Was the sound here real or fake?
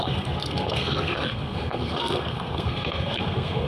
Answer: fake